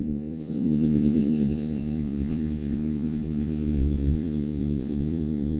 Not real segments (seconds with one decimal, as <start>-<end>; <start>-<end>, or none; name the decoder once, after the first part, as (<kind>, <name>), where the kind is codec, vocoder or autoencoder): 0.0-5.6 (vocoder, Vocos)